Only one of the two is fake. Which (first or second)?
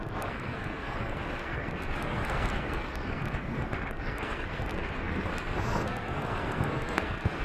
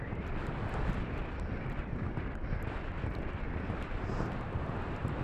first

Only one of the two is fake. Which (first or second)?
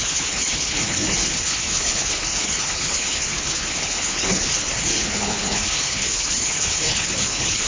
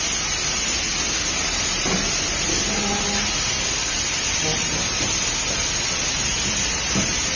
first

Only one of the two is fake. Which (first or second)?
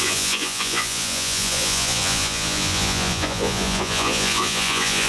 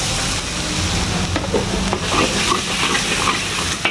first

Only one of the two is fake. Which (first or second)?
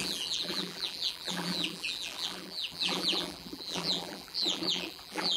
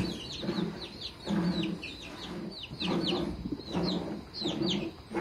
first